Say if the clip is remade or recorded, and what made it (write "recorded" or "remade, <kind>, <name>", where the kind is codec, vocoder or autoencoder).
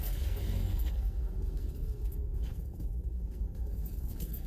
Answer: remade, codec, SNAC